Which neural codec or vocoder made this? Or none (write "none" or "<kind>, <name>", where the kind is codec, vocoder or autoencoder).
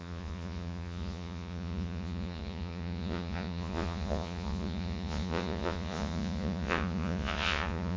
vocoder, Vocos